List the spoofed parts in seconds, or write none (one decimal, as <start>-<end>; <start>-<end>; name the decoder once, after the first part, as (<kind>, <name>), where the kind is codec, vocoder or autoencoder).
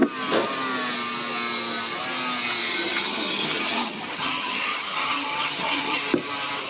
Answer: 2.7-6.0 (vocoder, HiFi-GAN)